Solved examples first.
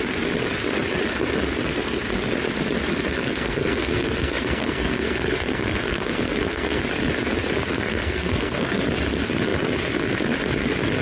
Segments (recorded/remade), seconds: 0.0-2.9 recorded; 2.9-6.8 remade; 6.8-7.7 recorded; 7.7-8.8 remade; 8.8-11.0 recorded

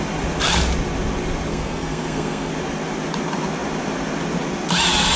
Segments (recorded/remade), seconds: 0.0-1.5 recorded; 1.5-2.5 remade; 2.5-5.2 recorded